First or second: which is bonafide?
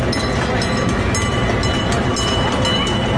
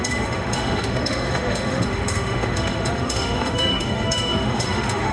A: first